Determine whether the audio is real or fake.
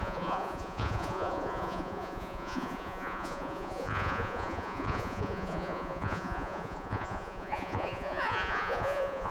fake